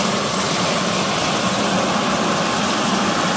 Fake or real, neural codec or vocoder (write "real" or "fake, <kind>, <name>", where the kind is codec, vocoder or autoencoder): real